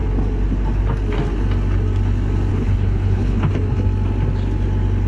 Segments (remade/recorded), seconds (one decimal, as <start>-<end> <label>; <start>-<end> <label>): 0.0-2.5 recorded; 2.5-3.5 remade; 3.5-5.1 recorded